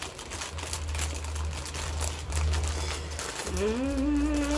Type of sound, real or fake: real